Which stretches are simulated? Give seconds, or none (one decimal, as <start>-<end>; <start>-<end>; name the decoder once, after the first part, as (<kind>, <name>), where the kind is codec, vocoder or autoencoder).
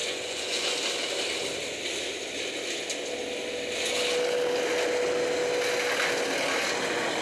0.0-0.7 (vocoder, Vocos)